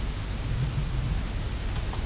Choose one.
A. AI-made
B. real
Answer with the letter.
B